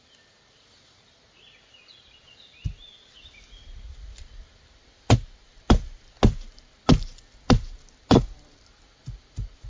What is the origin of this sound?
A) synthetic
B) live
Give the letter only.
B